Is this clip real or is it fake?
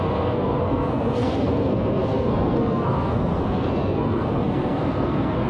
fake